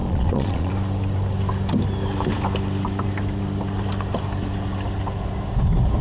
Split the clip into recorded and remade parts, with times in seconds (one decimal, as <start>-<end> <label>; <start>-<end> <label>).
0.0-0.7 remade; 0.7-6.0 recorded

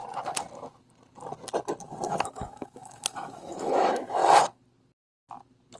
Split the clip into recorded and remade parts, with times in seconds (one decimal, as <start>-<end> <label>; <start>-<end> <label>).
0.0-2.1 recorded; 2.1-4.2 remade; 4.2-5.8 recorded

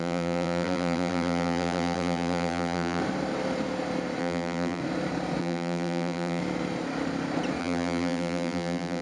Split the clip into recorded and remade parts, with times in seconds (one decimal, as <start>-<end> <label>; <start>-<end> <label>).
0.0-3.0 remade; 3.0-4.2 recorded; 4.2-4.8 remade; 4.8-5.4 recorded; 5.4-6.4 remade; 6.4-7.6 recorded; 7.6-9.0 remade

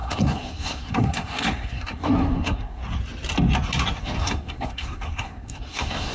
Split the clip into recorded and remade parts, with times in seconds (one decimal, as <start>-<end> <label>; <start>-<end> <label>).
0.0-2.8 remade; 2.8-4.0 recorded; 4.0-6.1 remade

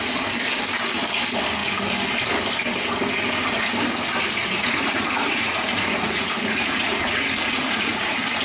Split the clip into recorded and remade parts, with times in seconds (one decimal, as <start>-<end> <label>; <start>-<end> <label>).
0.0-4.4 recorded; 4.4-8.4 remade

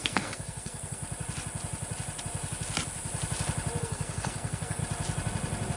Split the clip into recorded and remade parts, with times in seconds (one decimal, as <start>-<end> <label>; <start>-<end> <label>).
0.0-1.0 remade; 1.0-3.8 recorded; 3.8-4.8 remade; 4.8-5.8 recorded

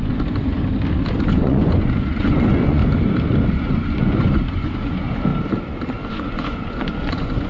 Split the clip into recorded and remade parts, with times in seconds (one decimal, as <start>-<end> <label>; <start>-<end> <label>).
0.0-0.6 remade; 0.6-1.3 recorded; 1.3-2.8 remade; 2.8-3.5 recorded; 3.5-5.3 remade; 5.3-6.1 recorded; 6.1-7.5 remade

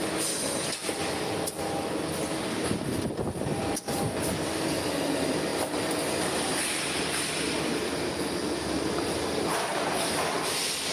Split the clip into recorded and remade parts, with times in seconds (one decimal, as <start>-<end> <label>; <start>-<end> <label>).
0.0-10.9 recorded